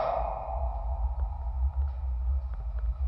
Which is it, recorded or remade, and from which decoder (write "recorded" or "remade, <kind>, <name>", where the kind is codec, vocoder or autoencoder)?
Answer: recorded